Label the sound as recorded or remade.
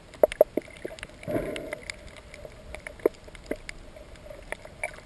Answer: recorded